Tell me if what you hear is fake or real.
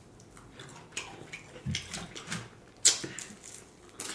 real